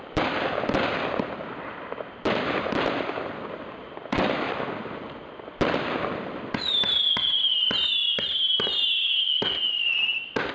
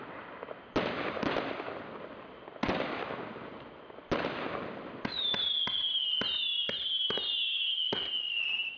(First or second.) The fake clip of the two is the first